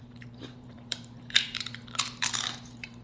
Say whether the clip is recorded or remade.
remade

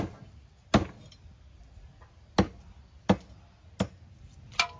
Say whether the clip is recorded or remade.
recorded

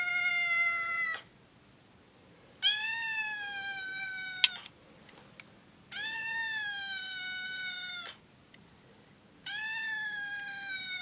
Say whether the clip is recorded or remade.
recorded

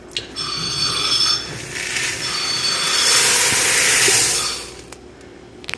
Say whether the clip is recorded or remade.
recorded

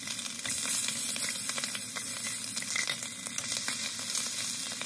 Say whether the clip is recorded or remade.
recorded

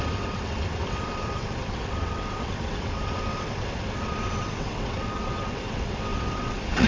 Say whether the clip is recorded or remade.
remade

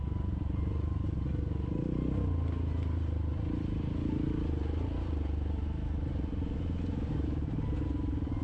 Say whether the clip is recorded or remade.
recorded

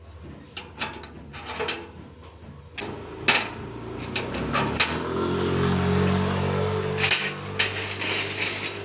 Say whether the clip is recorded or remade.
recorded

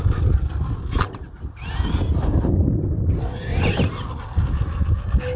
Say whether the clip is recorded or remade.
recorded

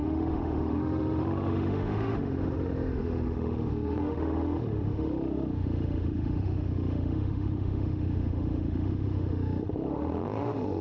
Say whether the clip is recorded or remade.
remade